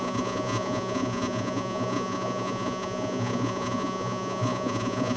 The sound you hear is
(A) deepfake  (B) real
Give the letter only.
A